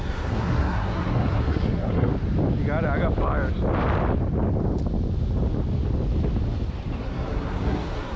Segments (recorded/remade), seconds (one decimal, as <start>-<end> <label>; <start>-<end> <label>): 0.0-2.1 remade; 2.1-7.0 recorded; 7.0-8.2 remade